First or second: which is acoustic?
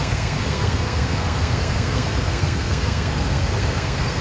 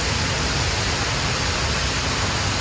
second